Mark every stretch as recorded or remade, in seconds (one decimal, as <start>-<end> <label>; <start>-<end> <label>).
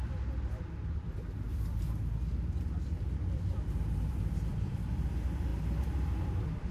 0.0-6.7 remade